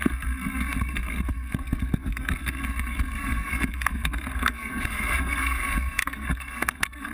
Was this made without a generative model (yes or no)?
no